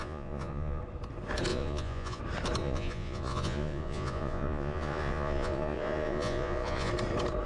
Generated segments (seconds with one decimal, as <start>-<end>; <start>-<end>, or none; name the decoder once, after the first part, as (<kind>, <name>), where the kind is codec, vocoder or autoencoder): 0.0-0.8 (vocoder, Vocos); 1.5-2.2; 2.6-6.9